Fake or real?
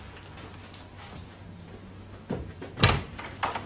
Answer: real